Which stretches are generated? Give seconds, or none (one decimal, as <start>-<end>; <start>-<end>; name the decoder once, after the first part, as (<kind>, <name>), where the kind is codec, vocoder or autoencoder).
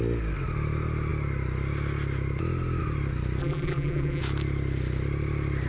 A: 3.4-4.2 (vocoder, BigVGAN v2)